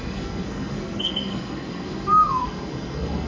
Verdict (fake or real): fake